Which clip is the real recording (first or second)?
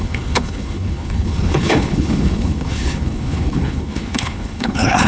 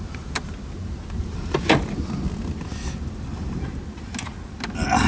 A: second